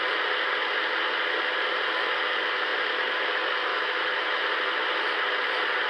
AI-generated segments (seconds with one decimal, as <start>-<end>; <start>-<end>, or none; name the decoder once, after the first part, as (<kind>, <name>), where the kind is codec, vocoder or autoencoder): 3.7-4.4 (autoencoder, DAC-VAE)